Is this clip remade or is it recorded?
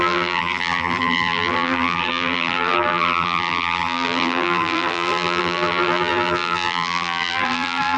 remade